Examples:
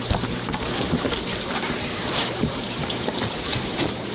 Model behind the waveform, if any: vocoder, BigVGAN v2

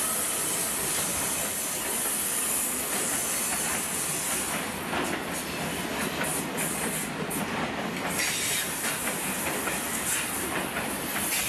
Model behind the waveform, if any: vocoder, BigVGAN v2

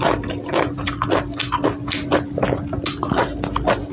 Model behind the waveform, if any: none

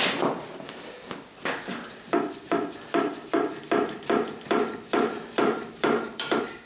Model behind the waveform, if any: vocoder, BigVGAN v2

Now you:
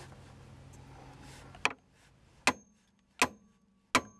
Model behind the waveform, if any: none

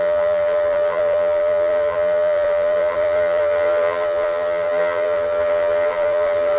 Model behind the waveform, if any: vocoder, BigVGAN v2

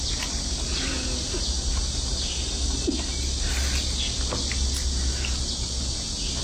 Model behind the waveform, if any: none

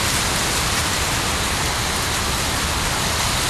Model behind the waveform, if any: none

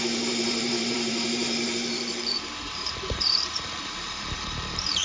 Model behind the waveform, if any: vocoder, BigVGAN v2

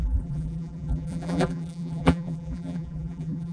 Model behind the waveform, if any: vocoder, BigVGAN v2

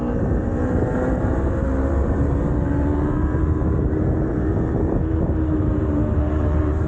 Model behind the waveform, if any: vocoder, BigVGAN v2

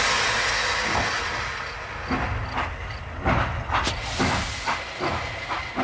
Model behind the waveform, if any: none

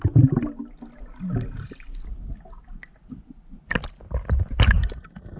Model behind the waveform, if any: none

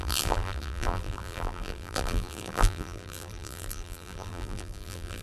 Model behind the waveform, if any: vocoder, BigVGAN v2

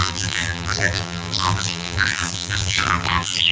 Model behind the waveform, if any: vocoder, BigVGAN v2